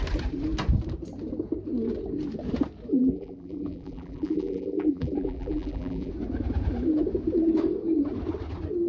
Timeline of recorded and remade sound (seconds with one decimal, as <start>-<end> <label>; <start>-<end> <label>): 0.0-2.9 recorded; 2.9-6.1 remade; 6.1-8.9 recorded